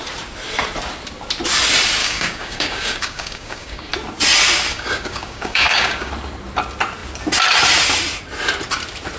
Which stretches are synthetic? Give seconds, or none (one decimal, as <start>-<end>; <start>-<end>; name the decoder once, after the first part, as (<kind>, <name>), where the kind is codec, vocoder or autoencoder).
2.0-3.9 (codec, DAC); 4.7-6.1